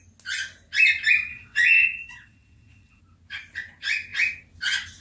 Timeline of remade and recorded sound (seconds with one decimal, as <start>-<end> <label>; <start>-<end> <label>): 0.0-1.3 recorded; 1.3-3.0 remade; 3.0-5.0 recorded